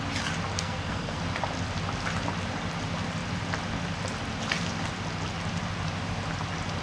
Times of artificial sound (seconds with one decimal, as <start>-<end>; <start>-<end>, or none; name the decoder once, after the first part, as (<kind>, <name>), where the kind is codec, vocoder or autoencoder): 0.5-1.2 (codec, SNAC)